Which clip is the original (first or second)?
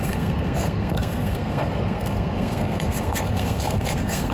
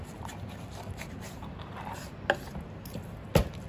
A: second